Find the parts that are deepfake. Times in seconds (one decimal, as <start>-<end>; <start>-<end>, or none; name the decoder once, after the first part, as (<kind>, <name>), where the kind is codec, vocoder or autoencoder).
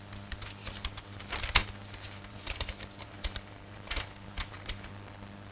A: 0.6-1.2 (vocoder, BigVGAN v2); 1.6-4.9